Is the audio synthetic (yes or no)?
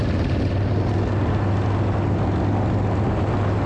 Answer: no